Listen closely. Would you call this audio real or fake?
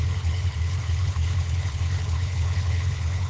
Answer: fake